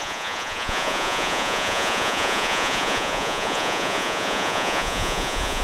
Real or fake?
fake